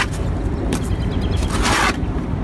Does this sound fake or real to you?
real